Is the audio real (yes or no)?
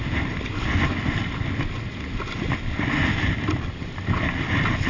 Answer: yes